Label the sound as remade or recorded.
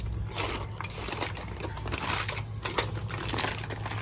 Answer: recorded